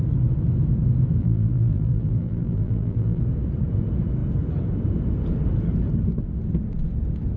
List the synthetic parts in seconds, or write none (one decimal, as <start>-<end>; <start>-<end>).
1.2-3.2